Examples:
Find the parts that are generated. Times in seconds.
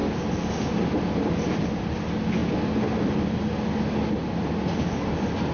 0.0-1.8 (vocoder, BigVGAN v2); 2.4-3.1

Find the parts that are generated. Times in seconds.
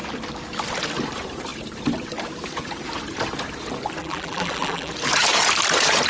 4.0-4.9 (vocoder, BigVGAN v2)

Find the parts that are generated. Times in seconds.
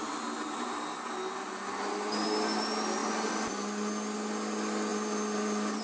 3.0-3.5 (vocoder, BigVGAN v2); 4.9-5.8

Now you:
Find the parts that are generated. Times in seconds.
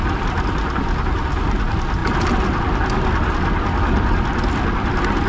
none